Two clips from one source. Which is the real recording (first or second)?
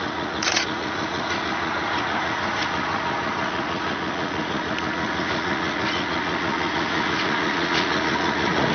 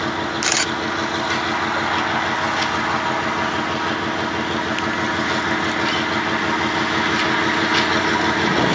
second